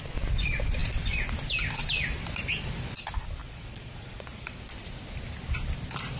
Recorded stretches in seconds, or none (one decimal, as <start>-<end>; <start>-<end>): 0.0-3.4; 4.5-6.2